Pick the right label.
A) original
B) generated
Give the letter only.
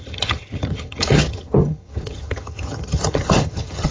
B